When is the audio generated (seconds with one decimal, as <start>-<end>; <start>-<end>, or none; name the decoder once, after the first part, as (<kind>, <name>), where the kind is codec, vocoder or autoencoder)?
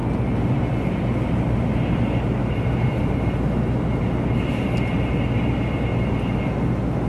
none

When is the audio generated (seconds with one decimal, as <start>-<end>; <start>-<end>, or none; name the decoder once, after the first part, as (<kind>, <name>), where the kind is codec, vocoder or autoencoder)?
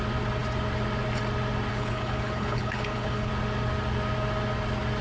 1.7-3.3 (codec, HILCodec)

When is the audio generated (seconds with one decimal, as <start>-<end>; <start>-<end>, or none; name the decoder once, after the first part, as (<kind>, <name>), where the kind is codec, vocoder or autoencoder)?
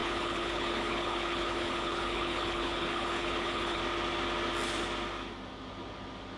0.0-3.8 (codec, HILCodec)